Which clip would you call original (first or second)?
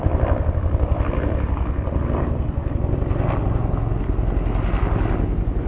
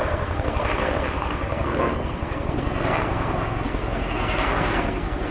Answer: first